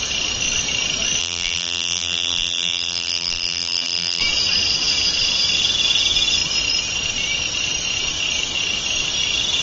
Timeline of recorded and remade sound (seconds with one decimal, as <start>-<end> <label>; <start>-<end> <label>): 0.0-1.2 recorded; 1.2-4.2 remade; 4.2-9.6 recorded